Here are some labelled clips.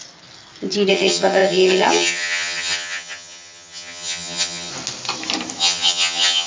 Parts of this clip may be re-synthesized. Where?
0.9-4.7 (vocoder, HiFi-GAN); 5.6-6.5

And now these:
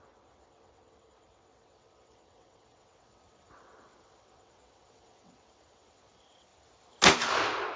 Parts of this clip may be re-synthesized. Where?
0.0-6.5 (vocoder, WaveNeXt)

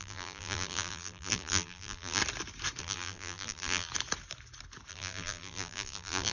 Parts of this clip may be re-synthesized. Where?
0.0-2.2 (vocoder, BigVGAN v2); 2.8-3.9; 4.9-6.3

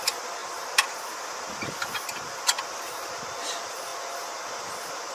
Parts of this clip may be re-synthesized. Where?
0.0-0.4 (vocoder, BigVGAN v2); 3.5-3.9